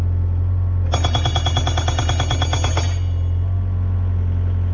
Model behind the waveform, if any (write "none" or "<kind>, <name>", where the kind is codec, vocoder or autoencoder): none